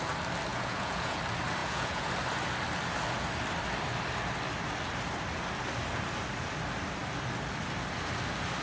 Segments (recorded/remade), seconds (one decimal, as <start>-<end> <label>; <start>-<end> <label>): 0.0-0.5 recorded; 0.5-1.2 remade; 1.2-1.6 recorded; 1.6-2.1 remade; 2.1-8.6 recorded